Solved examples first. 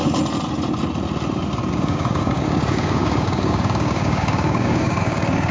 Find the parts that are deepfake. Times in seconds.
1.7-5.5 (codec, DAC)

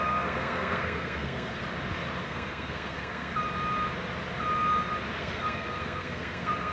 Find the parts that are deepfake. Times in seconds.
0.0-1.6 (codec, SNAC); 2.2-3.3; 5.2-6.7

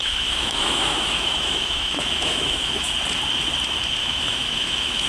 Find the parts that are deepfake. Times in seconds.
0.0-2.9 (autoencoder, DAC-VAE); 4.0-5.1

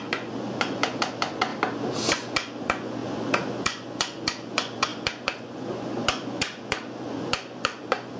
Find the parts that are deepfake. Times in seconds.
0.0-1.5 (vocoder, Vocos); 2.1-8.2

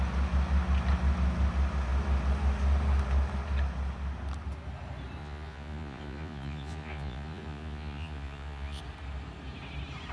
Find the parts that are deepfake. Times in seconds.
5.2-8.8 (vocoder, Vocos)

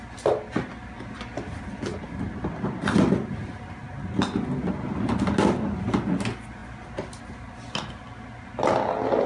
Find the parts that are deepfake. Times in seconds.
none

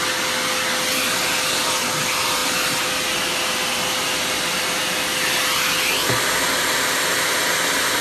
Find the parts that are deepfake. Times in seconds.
none

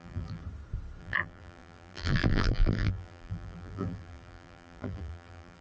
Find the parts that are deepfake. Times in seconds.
0.0-0.4 (vocoder, BigVGAN v2); 1.0-5.6